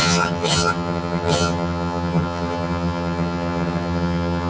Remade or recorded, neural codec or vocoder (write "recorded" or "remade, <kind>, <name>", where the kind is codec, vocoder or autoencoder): remade, vocoder, HiFi-GAN